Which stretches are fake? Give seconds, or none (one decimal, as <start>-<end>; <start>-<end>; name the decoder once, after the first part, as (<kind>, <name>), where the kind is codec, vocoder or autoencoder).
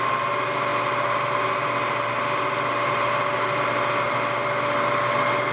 none